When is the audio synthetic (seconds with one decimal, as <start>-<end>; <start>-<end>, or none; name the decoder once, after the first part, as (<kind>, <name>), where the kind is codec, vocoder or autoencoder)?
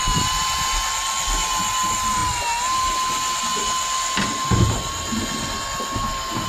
none